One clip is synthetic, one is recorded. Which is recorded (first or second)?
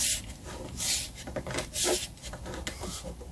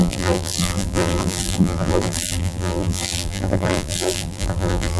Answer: first